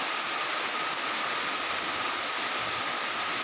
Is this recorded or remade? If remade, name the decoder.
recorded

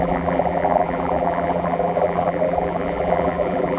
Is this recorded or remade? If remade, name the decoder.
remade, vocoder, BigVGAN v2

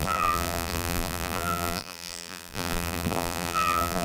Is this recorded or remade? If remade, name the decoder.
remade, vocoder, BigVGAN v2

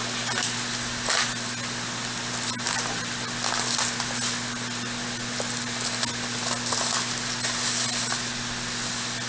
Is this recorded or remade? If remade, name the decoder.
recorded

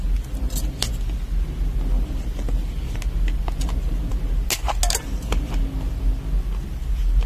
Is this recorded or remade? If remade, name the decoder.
recorded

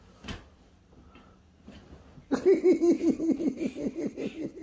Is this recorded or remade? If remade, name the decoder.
remade, vocoder, BigVGAN v2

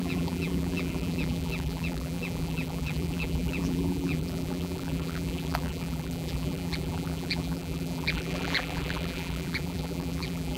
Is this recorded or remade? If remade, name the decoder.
remade, vocoder, BigVGAN v2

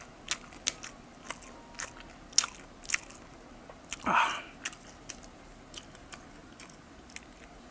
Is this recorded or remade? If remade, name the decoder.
recorded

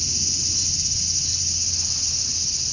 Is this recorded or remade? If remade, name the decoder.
recorded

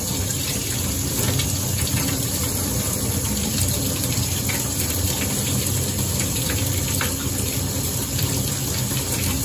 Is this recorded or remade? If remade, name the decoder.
remade, vocoder, BigVGAN v2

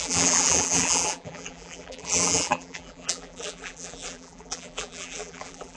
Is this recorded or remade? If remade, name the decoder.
remade, vocoder, BigVGAN v2